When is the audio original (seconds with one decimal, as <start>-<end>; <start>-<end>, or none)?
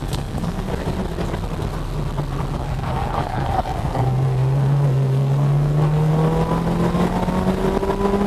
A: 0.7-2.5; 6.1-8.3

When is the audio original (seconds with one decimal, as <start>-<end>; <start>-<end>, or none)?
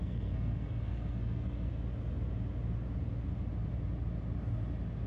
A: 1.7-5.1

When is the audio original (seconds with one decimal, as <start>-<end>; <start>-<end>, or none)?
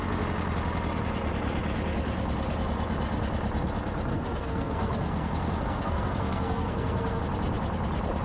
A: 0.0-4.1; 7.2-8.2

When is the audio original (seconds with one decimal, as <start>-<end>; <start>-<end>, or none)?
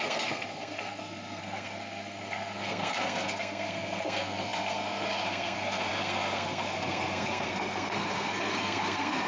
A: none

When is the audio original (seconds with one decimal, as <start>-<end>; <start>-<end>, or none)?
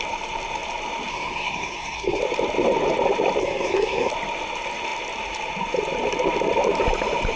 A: 0.0-1.1; 2.2-3.4; 4.1-7.4